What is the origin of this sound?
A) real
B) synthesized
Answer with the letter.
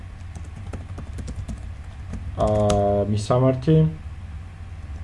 A